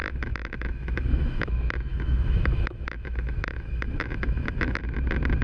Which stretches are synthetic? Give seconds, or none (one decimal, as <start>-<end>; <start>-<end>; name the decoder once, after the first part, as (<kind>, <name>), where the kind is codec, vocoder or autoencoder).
0.0-1.5 (autoencoder, DAC-VAE); 1.9-4.8